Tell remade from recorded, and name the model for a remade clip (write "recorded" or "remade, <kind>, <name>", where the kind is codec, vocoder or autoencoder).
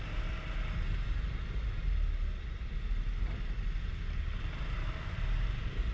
recorded